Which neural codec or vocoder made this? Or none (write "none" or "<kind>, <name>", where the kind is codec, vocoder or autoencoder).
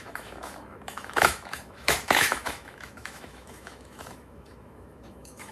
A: autoencoder, DAC-VAE